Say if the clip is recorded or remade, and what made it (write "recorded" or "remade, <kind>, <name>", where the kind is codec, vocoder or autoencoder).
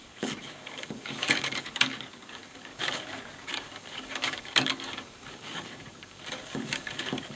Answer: remade, codec, DAC